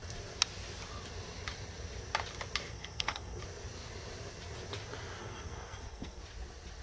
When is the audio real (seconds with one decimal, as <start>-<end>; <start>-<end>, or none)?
0.0-2.7; 3.4-5.2; 6.2-6.8